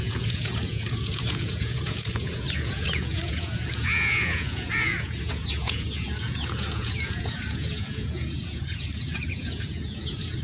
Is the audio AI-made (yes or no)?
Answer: yes